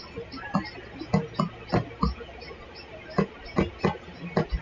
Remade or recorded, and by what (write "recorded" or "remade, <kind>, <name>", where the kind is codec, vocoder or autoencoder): recorded